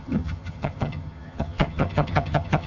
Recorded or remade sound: remade